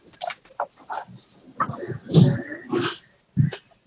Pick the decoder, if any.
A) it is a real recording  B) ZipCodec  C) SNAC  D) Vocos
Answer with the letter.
A